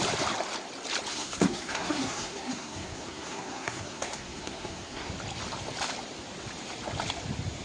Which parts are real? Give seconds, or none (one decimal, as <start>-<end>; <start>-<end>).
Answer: 0.0-1.1; 5.1-7.6